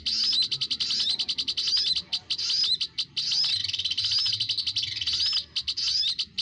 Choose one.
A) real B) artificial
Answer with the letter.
A